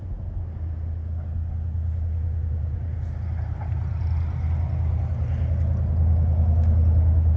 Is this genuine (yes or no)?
yes